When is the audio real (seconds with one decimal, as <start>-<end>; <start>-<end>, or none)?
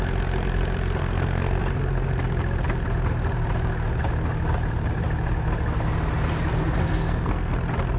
0.0-1.0; 1.6-6.8; 7.5-8.0